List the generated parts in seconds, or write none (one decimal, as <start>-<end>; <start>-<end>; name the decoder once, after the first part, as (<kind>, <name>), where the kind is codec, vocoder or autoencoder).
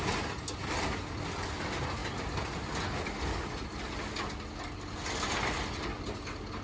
none